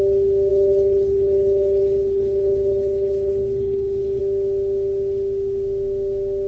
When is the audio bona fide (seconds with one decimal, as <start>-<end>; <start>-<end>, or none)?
0.0-0.5; 4.2-6.5